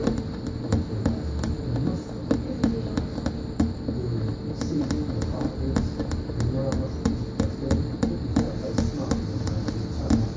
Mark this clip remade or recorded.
recorded